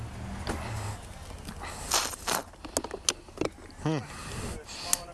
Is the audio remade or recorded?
recorded